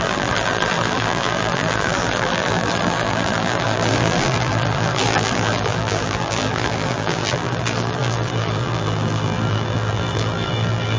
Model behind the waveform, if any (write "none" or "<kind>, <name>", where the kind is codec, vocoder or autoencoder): vocoder, BigVGAN v2